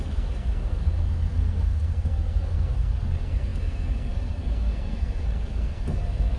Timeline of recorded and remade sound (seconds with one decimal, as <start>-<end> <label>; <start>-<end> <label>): 0.0-6.4 remade